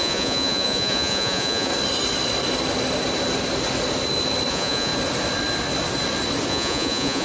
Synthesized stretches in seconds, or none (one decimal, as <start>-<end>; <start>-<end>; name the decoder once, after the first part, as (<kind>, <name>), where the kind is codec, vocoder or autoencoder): 0.0-1.7 (vocoder, Vocos); 4.5-4.9; 6.5-7.2